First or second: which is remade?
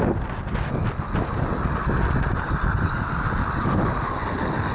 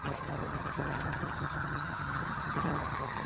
second